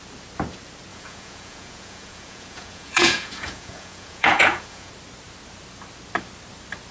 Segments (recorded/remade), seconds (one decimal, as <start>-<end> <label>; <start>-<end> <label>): 0.0-0.9 recorded; 0.9-4.9 remade; 4.9-6.9 recorded